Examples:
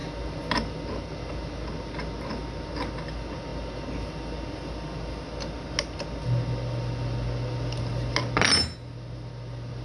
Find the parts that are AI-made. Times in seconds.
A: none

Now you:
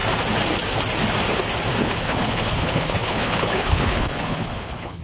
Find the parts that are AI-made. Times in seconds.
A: 1.8-5.0

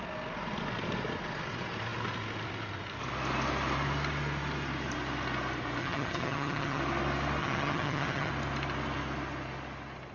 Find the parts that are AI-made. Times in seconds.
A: 5.8-6.8; 7.4-8.3